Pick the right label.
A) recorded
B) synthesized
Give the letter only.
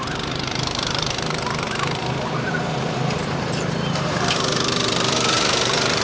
B